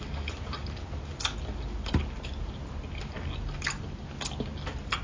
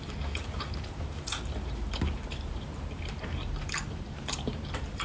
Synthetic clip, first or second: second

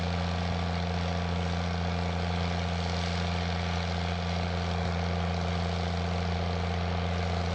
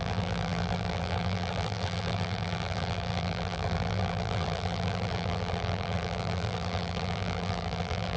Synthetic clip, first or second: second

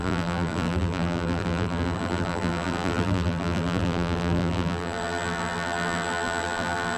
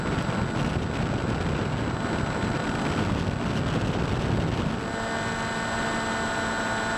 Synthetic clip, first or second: first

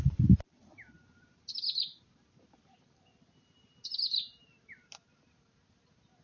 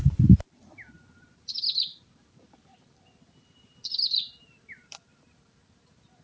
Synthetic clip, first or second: second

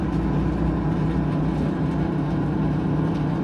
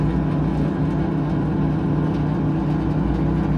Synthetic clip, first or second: first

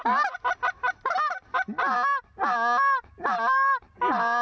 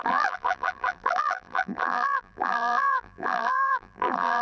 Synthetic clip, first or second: second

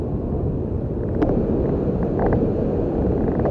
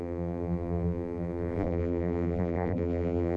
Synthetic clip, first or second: second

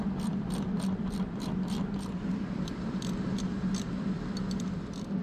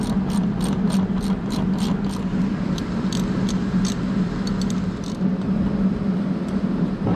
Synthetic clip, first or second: first